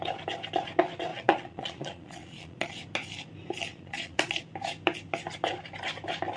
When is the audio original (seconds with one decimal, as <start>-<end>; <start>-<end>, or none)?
0.0-1.1; 2.7-3.7; 4.4-6.4